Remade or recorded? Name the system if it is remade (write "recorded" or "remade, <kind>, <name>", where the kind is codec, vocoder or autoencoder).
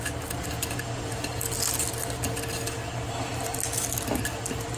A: recorded